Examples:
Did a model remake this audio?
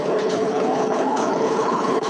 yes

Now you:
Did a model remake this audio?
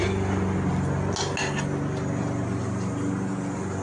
no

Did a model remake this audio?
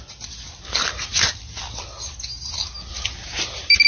no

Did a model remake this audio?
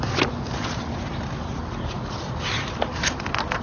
no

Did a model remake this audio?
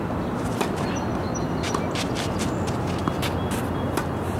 no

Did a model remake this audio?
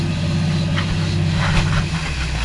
no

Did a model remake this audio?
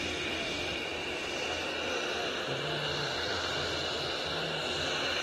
no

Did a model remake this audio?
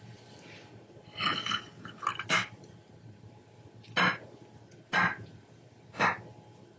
no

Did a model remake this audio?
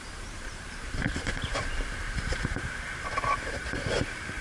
yes